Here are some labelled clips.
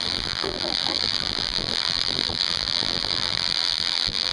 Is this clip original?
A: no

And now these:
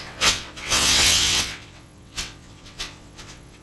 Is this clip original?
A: no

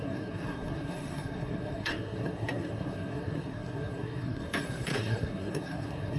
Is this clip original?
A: no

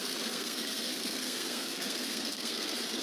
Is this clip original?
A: no